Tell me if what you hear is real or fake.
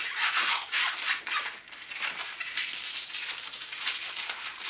real